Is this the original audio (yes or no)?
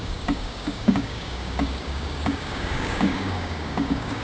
no